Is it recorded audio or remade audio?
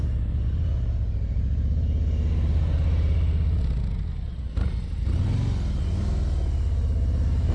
recorded